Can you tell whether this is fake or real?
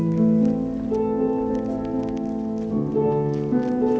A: real